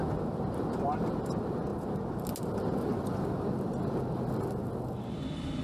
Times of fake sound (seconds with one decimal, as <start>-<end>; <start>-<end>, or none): none